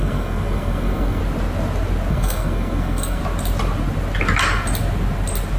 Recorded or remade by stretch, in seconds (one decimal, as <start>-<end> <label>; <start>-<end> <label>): 0.0-1.2 remade; 1.2-2.1 recorded; 2.1-3.2 remade; 3.2-5.6 recorded